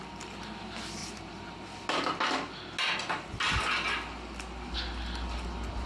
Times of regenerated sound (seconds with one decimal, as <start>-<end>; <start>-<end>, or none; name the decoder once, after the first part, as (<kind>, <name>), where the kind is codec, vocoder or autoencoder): 1.0-1.6 (vocoder, BigVGAN v2)